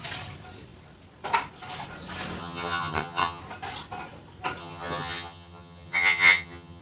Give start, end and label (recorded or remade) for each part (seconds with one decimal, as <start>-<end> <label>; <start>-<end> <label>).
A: 0.0-2.4 recorded; 2.4-3.4 remade; 3.4-4.6 recorded; 4.6-6.8 remade